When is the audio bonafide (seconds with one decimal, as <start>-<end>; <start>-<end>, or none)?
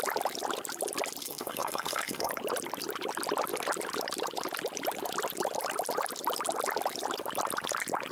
0.0-1.2; 2.3-8.1